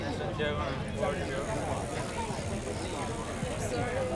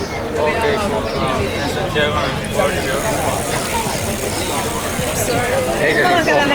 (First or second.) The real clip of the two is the first